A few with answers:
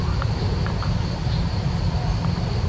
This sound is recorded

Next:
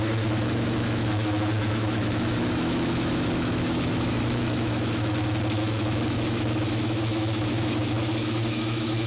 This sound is remade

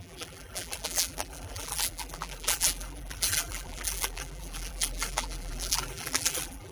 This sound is remade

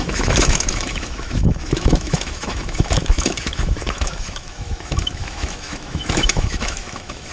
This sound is remade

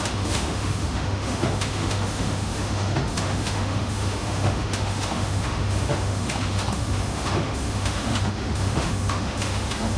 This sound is remade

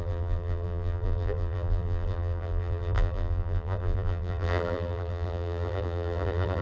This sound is remade